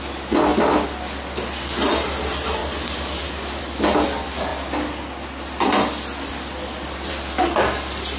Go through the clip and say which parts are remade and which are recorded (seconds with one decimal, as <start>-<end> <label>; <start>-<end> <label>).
0.0-8.2 recorded